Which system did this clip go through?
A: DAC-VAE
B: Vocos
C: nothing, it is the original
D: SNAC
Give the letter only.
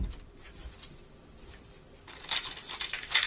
C